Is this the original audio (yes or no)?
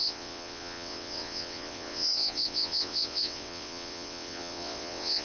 no